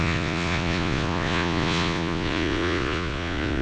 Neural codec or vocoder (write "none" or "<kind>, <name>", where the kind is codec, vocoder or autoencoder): vocoder, Vocos